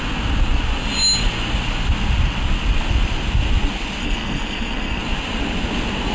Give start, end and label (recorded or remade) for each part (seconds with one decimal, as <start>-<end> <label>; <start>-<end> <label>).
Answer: 0.0-4.0 recorded; 4.0-5.0 remade; 5.0-6.1 recorded